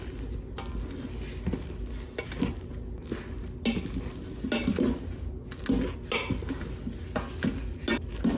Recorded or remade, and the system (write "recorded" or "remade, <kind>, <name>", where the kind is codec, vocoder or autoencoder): recorded